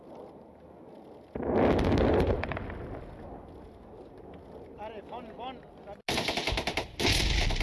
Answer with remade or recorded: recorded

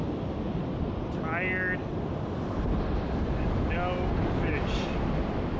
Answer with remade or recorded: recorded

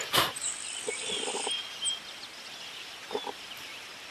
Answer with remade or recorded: recorded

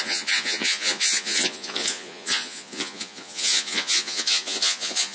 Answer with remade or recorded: remade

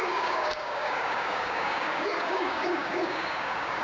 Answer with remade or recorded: remade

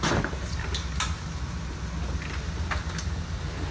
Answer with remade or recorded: recorded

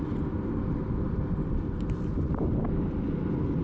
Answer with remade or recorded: recorded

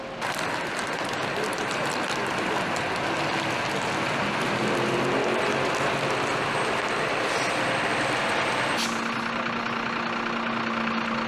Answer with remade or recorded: recorded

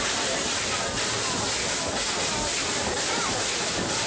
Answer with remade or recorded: recorded